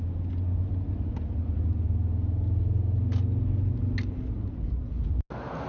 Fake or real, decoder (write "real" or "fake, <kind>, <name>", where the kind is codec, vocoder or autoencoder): real